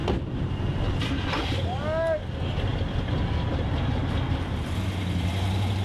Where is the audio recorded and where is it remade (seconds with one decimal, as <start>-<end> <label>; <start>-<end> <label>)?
0.0-5.8 recorded